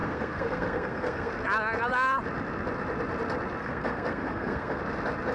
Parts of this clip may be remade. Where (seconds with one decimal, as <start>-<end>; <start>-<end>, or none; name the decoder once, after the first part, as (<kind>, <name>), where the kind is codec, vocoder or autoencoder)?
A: 0.0-1.3 (codec, SNAC); 3.6-4.8